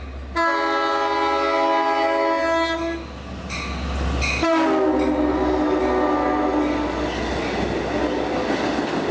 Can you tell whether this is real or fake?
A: real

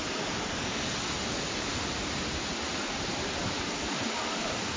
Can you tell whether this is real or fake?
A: real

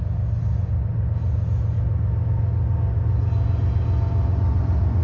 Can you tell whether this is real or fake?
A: real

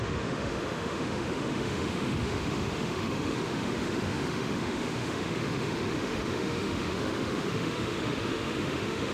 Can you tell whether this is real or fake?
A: fake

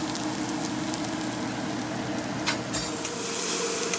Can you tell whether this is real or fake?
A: real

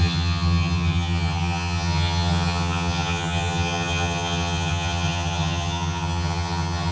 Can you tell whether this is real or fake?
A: fake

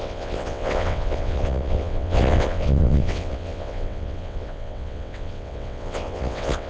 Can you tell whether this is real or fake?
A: fake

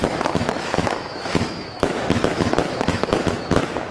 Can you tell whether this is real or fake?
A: fake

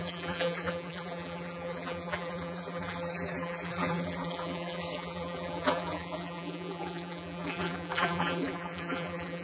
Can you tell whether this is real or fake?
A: fake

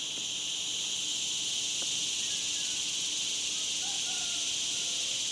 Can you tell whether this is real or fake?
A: real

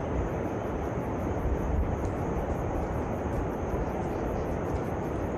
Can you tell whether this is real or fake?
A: real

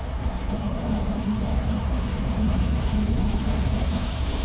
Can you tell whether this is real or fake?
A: fake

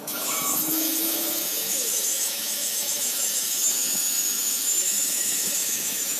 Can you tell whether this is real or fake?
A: fake